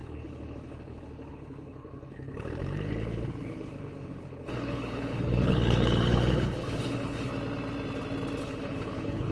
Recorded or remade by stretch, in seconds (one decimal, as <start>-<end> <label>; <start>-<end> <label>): 0.0-7.3 remade; 7.3-8.4 recorded; 8.4-9.3 remade